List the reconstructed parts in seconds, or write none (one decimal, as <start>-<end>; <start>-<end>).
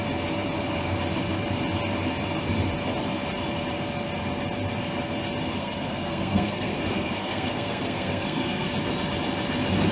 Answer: 5.6-8.7